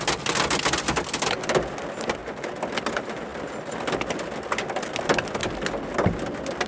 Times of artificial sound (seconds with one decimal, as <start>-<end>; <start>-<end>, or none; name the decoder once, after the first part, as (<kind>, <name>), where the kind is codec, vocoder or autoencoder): 0.0-2.2 (vocoder, BigVGAN v2); 2.8-6.7